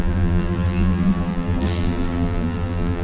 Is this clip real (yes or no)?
no